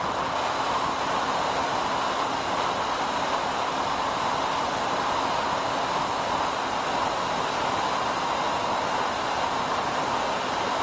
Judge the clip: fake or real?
real